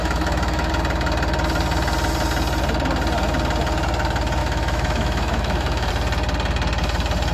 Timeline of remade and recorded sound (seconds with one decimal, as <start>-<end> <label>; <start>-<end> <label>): 0.0-0.7 remade; 0.7-4.4 recorded; 4.4-5.9 remade; 5.9-7.3 recorded